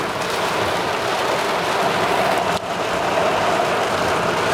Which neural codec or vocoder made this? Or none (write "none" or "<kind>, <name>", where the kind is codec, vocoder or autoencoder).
none